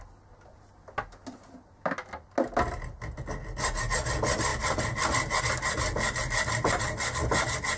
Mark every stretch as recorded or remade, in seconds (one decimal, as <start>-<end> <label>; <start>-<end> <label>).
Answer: 0.0-7.8 recorded